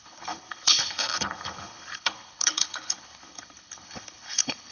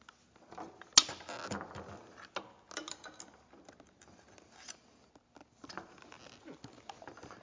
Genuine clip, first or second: second